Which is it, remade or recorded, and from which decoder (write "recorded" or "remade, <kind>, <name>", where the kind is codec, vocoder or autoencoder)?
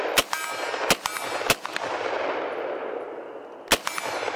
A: recorded